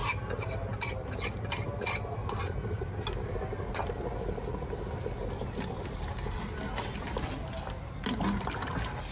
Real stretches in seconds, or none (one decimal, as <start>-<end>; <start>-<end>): 0.0-9.1